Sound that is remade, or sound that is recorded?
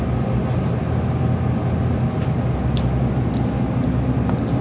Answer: recorded